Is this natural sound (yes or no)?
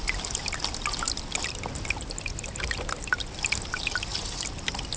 yes